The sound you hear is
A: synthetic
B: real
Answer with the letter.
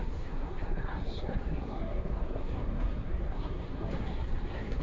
A